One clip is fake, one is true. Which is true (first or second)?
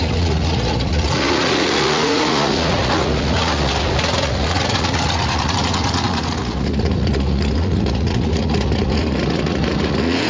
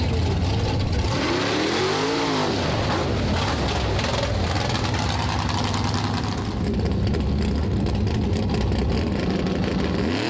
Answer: second